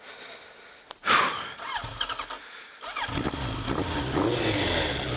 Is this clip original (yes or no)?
yes